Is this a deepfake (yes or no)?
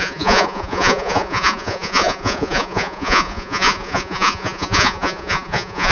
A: yes